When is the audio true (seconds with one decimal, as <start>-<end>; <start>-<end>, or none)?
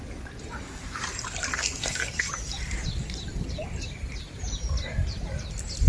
0.0-1.5; 2.3-5.9